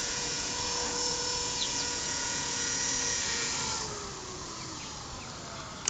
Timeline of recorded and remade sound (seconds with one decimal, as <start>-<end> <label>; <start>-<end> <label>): 0.0-3.5 remade; 3.5-4.2 recorded; 4.2-4.9 remade; 4.9-5.9 recorded